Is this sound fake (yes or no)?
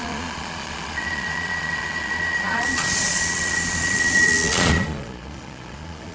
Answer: yes